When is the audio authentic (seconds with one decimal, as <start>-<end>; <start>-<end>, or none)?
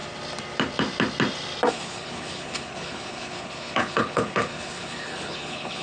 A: 0.0-1.7